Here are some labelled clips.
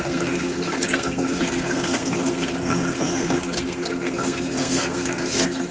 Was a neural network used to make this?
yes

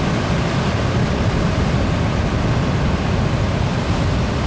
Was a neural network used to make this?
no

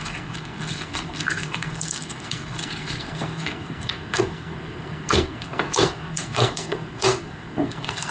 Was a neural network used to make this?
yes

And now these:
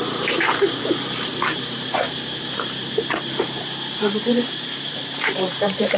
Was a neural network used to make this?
yes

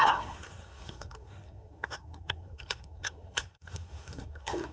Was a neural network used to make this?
yes